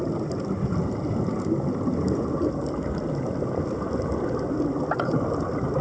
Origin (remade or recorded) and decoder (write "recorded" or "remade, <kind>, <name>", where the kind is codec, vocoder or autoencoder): recorded